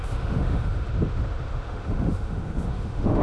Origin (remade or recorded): remade